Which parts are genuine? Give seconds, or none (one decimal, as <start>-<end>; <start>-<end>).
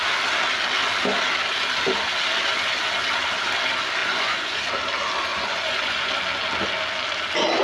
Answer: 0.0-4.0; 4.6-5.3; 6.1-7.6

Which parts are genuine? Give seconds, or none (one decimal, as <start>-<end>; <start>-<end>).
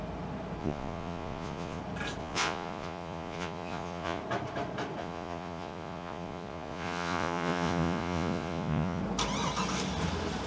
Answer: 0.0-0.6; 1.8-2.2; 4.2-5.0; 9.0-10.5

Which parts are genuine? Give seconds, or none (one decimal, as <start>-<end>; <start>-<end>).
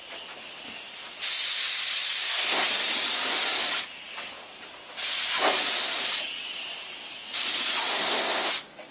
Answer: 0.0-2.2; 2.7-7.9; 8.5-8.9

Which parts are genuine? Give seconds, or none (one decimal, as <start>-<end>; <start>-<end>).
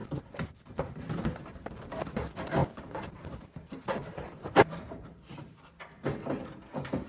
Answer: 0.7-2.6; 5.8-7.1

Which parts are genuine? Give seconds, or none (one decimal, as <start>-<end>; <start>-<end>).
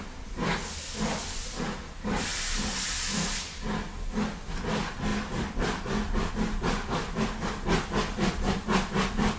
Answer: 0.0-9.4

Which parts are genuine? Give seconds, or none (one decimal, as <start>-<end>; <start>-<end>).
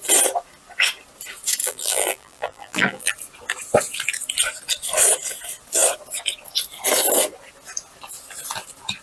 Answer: 0.0-1.6; 3.1-9.0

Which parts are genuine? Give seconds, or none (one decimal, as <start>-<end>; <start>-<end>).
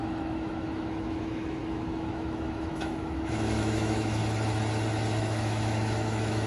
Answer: 4.2-5.2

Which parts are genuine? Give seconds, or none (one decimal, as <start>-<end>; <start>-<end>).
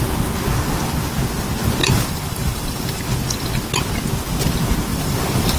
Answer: 0.0-1.8; 3.0-4.9